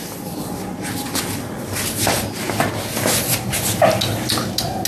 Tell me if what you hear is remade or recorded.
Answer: recorded